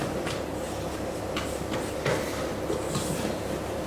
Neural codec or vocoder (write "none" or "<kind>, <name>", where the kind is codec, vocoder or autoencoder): none